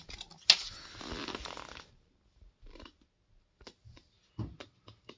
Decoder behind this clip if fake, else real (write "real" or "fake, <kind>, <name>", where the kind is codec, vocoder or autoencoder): real